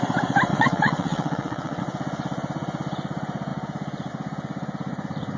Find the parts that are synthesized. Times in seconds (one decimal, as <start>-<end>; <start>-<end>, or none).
0.5-1.8